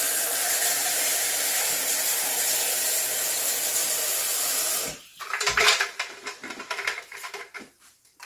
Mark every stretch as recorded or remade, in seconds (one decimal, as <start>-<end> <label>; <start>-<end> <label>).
0.0-1.1 recorded; 1.1-2.4 remade; 2.4-5.1 recorded; 5.1-7.6 remade; 7.6-8.3 recorded